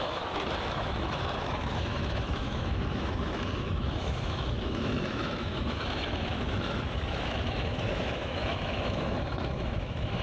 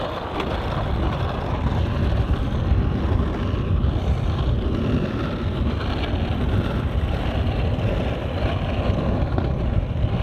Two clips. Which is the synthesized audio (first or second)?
first